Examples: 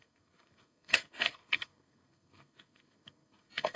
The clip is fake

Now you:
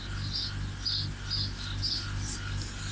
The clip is real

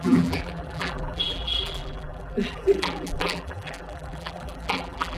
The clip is fake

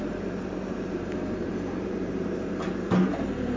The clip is fake